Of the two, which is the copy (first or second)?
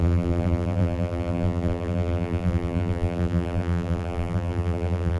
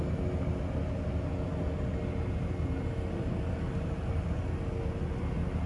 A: first